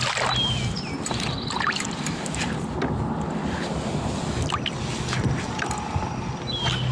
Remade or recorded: recorded